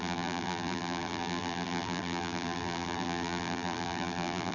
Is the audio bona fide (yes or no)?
no